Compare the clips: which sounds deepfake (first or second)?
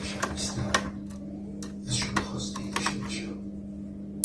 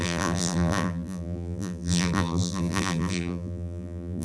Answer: second